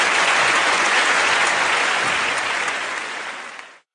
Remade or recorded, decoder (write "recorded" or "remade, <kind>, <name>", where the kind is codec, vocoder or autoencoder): remade, vocoder, Vocos